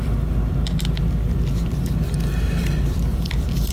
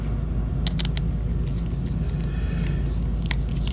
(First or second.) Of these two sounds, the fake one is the first